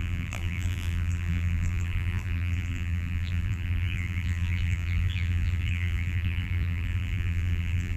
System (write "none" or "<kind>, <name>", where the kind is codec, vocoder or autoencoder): vocoder, BigVGAN v2